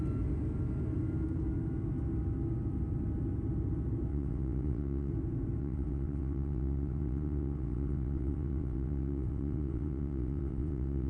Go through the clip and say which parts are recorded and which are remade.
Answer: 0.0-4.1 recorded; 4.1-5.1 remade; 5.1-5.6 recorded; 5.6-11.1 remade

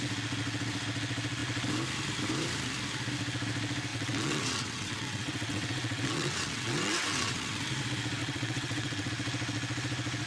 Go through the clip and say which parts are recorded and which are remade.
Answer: 0.0-3.9 recorded; 3.9-7.8 remade; 7.8-8.2 recorded; 8.2-9.1 remade; 9.1-10.3 recorded

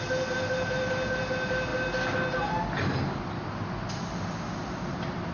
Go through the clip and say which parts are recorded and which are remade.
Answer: 0.0-5.3 recorded

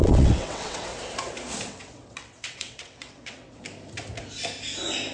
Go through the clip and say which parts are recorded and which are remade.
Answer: 0.0-0.9 remade; 0.9-1.7 recorded; 1.7-3.6 remade; 3.6-5.1 recorded